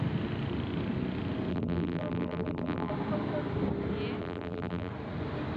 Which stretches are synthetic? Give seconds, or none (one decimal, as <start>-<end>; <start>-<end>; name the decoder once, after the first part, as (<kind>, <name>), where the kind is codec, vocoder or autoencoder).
1.5-2.9 (vocoder, BigVGAN v2); 4.2-4.9